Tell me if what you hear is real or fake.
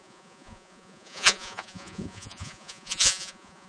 fake